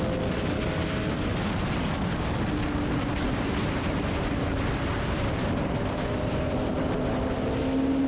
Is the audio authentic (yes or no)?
yes